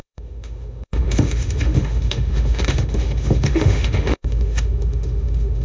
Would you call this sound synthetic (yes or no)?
yes